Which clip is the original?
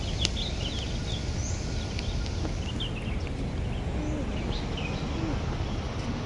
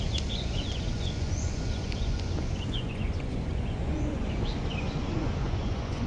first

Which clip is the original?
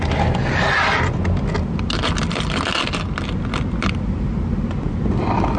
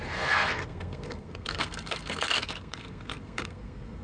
first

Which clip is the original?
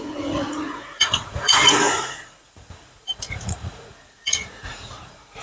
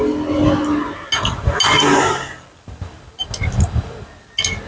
second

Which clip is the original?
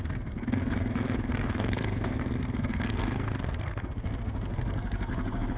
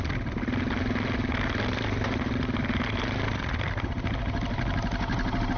second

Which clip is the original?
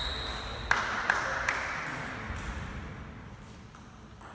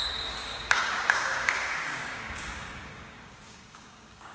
first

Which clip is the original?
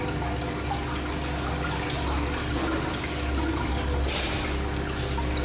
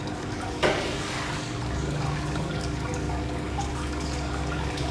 first